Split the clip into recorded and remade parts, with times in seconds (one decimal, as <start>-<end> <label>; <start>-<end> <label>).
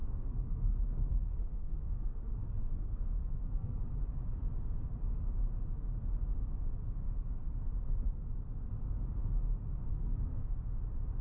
0.0-3.8 remade; 3.8-9.9 recorded; 9.9-10.6 remade; 10.6-11.2 recorded